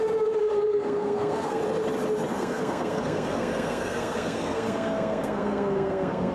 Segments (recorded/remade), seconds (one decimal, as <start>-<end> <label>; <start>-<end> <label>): 0.0-0.4 recorded; 0.4-1.6 remade; 1.6-2.3 recorded; 2.3-6.3 remade